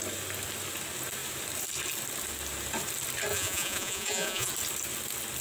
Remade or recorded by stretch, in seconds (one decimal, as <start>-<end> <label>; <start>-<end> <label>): 0.0-3.3 recorded; 3.3-4.5 remade; 4.5-5.4 recorded